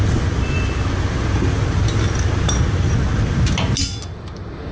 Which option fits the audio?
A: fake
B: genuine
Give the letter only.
B